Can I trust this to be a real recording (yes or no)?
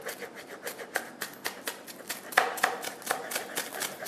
yes